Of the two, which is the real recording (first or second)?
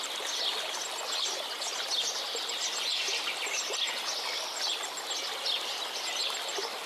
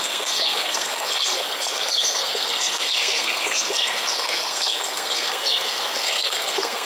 first